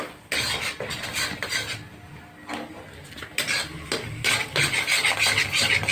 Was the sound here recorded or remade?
recorded